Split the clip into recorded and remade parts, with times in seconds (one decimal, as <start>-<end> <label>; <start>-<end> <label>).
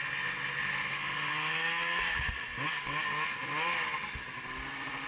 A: 0.0-0.9 recorded; 0.9-2.8 remade; 2.8-5.1 recorded